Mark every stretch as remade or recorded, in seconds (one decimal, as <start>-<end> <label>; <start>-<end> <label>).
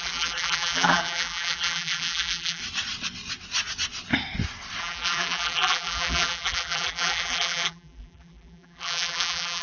0.0-2.6 remade; 2.6-4.8 recorded; 4.8-9.6 remade